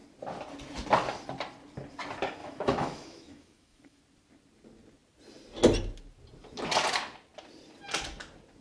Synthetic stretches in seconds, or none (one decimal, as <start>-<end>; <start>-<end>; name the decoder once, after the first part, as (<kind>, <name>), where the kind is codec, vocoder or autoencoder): 2.4-4.0 (autoencoder, DAC-VAE)